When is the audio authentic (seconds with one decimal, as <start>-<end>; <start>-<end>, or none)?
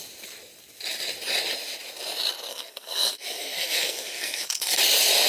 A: 0.0-2.5; 4.8-5.3